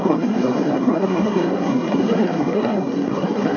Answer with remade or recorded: remade